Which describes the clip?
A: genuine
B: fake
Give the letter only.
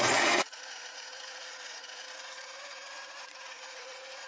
B